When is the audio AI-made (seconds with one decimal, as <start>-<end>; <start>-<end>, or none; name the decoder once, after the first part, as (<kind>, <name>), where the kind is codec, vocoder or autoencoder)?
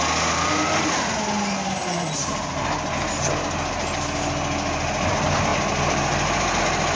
none